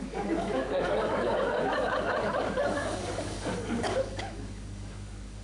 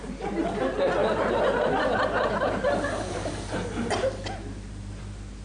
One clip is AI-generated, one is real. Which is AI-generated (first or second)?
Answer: first